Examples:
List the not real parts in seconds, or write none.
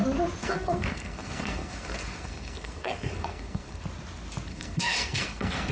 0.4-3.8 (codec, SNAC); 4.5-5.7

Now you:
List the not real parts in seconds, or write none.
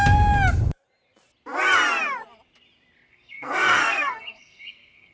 3.1-5.1 (codec, SNAC)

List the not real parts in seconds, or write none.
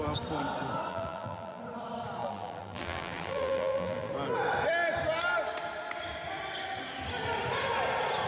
0.9-1.6 (vocoder, BigVGAN v2); 2.2-4.1